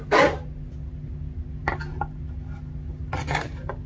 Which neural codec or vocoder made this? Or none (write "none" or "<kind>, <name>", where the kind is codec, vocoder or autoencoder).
none